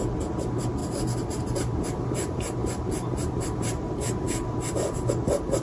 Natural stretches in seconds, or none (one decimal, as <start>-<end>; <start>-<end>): 0.0-0.8; 4.2-5.6